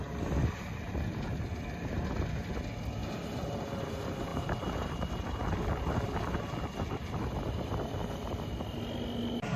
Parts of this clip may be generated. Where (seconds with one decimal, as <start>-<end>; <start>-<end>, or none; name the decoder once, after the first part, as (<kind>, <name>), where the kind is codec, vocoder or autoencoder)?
3.0-3.6 (vocoder, BigVGAN v2); 4.3-5.1